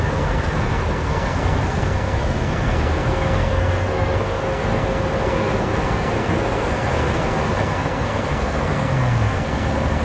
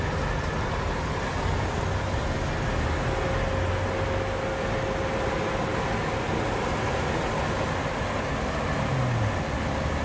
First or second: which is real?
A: second